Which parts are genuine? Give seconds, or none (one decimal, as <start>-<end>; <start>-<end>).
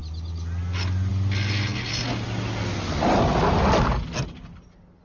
0.0-5.0